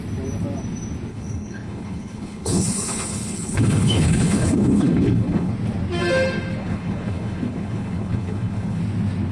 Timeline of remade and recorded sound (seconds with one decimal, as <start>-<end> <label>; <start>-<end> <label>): 0.0-1.1 recorded; 1.1-5.5 remade; 5.5-6.6 recorded; 6.6-8.8 remade; 8.8-9.3 recorded